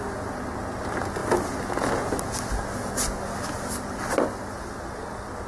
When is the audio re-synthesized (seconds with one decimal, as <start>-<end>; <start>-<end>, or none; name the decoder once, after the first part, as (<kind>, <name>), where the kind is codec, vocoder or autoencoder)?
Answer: none

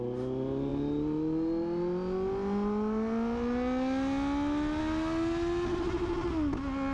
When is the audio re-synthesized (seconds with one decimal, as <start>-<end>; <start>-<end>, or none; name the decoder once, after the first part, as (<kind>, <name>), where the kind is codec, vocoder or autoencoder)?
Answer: none

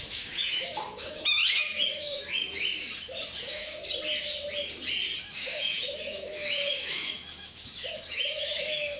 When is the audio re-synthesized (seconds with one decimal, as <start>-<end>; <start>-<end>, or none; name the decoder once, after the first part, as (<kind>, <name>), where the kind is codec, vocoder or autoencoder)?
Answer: 0.0-2.7 (autoencoder, DAC-VAE); 3.4-3.8; 5.2-9.0